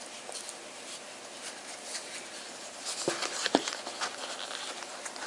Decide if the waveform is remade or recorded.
recorded